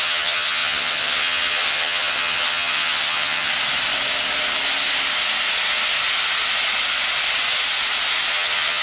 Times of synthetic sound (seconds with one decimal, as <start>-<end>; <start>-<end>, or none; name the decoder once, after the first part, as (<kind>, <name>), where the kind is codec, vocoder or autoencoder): 0.0-3.5 (vocoder, HiFi-GAN); 8.3-8.8